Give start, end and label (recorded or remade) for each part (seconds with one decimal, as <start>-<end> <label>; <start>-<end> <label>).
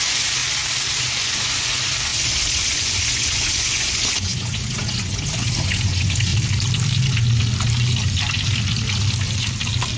0.0-0.4 remade; 0.4-1.0 recorded; 1.0-6.3 remade; 6.3-10.0 recorded